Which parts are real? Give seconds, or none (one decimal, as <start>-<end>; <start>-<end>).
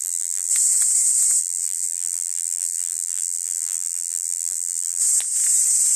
0.5-1.4; 5.0-6.0